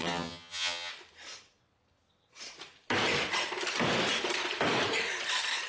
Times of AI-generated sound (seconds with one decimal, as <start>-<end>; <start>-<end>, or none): 0.0-0.9